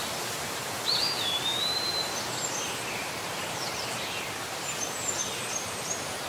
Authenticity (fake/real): fake